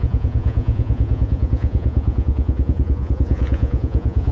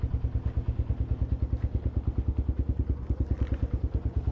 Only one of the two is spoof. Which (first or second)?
first